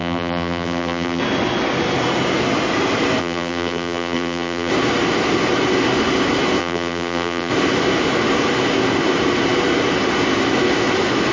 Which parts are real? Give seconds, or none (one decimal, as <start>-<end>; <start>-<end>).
1.2-3.2; 4.7-6.6; 7.5-11.3